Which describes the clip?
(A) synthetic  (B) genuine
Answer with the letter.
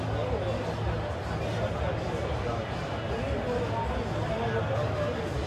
B